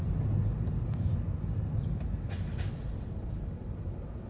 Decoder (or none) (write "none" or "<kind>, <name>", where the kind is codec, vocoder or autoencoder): none